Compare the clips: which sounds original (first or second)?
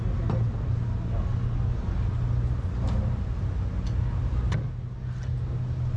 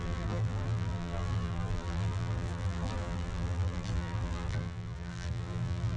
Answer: first